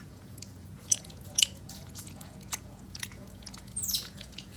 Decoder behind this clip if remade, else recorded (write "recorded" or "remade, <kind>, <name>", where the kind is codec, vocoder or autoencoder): remade, vocoder, Vocos